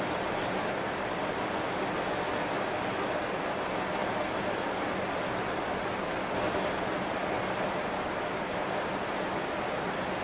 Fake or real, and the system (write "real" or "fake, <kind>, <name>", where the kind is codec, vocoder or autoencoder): real